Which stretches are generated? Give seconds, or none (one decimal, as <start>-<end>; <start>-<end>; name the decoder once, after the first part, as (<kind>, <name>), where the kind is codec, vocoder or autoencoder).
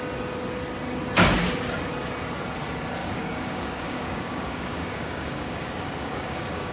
3.0-6.7 (codec, DAC)